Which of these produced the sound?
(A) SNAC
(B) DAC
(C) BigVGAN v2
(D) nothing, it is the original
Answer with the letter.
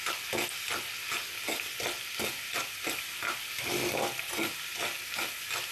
D